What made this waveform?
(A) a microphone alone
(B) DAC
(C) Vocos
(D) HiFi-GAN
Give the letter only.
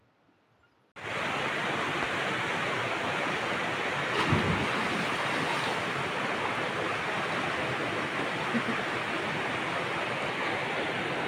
A